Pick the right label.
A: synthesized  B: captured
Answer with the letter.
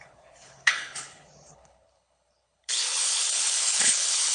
A